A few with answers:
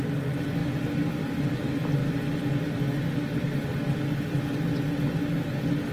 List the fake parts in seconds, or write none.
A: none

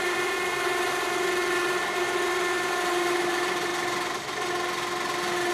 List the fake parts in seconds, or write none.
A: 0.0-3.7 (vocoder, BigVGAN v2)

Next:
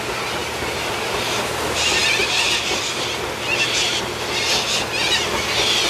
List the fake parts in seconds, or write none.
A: none

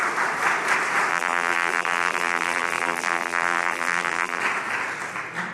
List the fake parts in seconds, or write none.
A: 1.1-4.4 (vocoder, BigVGAN v2)

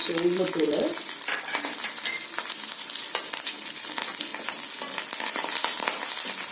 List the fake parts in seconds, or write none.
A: 0.0-3.8 (vocoder, BigVGAN v2)